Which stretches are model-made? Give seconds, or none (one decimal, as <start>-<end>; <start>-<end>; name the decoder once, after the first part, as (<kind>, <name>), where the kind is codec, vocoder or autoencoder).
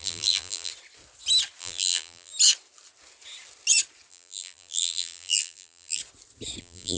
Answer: 0.0-0.7 (vocoder, BigVGAN v2); 1.6-2.3; 4.1-6.0; 6.6-7.0